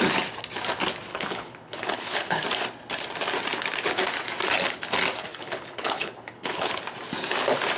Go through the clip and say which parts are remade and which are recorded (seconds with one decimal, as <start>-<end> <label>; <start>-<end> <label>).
0.0-1.1 recorded; 1.1-2.4 remade; 2.4-5.3 recorded; 5.3-6.8 remade; 6.8-7.8 recorded